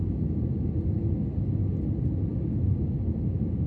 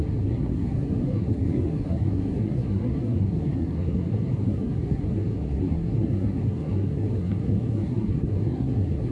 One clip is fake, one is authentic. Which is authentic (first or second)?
first